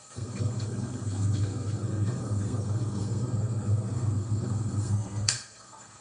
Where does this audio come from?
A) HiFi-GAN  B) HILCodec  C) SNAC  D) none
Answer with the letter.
C